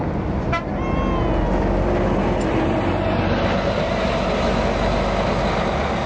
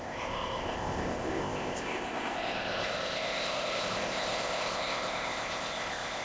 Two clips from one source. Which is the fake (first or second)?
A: second